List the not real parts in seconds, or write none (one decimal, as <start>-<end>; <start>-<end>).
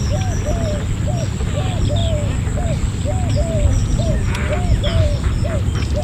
3.8-4.4